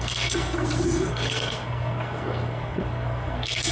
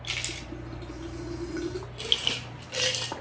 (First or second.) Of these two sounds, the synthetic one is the first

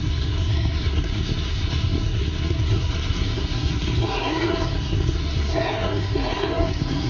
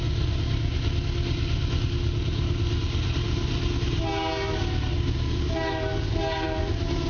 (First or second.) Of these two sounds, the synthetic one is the first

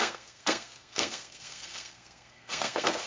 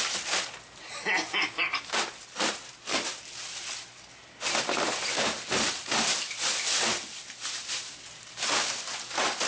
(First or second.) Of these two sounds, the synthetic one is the first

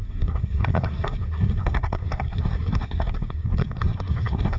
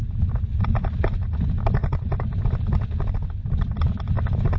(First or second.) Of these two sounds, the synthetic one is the first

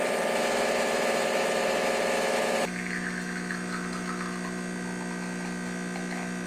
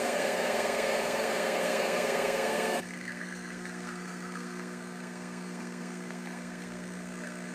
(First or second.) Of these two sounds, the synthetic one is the second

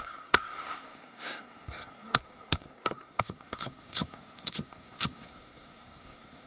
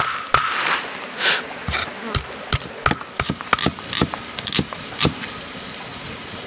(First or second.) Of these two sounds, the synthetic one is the first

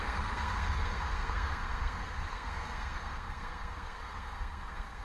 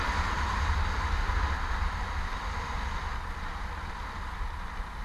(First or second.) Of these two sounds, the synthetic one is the first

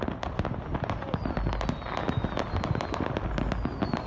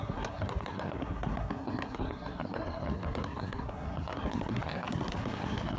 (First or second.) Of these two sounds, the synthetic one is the second